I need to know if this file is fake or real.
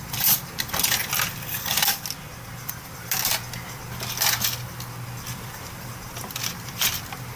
real